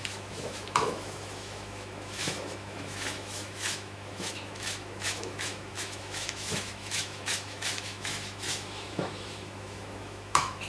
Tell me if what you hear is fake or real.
fake